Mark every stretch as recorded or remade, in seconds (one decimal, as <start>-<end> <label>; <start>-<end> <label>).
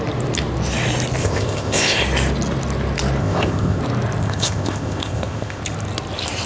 0.0-1.2 recorded; 1.2-2.0 remade; 2.0-3.2 recorded; 3.2-3.8 remade; 3.8-4.2 recorded; 4.2-5.6 remade; 5.6-6.5 recorded